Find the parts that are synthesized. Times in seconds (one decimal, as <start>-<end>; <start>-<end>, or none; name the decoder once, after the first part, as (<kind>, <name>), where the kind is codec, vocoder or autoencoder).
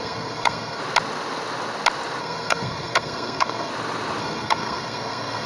0.0-0.8 (codec, SNAC); 2.2-3.7; 4.2-5.5